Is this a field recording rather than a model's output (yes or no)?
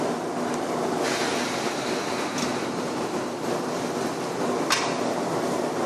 yes